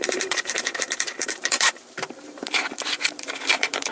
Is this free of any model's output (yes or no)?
no